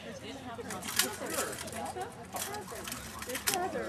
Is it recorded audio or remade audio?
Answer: recorded